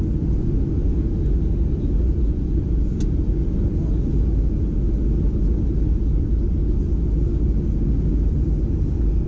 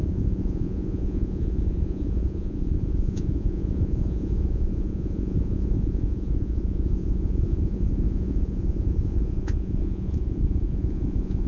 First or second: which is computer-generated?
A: second